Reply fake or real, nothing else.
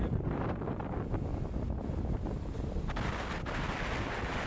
real